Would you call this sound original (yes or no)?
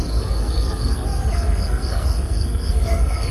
no